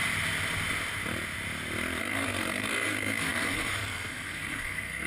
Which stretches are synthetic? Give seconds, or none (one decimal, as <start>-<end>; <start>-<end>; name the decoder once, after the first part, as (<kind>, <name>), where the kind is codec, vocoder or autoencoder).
2.0-5.1 (codec, SNAC)